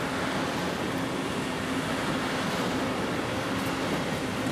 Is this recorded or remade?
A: recorded